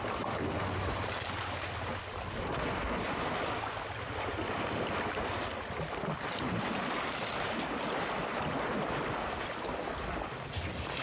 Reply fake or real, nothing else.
real